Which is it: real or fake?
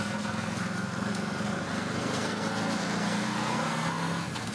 fake